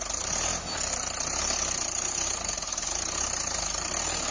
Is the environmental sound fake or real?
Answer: real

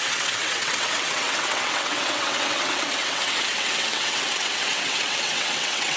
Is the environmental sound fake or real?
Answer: fake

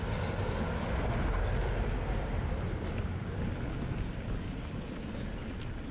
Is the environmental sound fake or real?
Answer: real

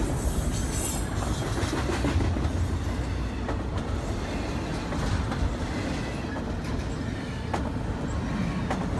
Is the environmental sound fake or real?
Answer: real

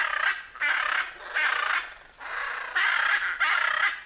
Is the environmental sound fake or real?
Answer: real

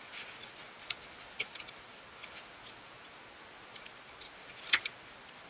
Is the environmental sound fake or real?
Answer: real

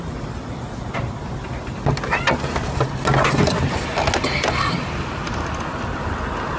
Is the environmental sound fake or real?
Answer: real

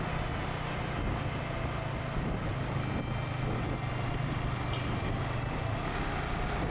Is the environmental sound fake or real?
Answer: real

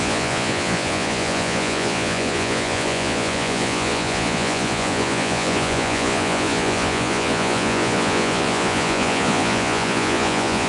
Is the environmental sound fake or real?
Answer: fake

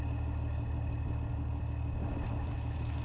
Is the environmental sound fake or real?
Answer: real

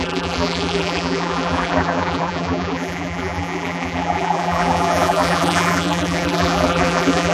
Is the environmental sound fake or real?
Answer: fake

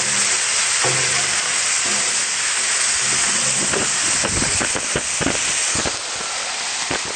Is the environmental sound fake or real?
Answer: real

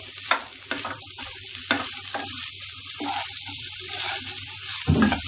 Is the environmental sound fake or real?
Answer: fake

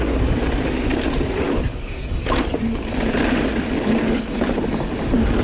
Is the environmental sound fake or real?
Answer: real